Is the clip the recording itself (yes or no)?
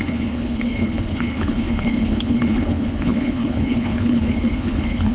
no